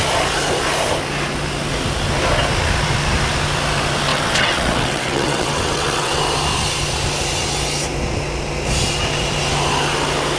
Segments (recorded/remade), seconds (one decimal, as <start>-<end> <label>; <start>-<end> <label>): 0.0-4.1 recorded; 4.1-6.2 remade; 6.2-10.4 recorded